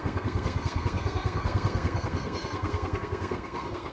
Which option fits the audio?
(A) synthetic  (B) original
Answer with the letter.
A